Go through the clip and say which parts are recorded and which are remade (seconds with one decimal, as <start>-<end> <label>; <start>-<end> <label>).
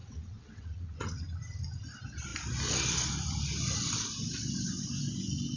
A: 0.0-1.2 remade; 1.2-5.6 recorded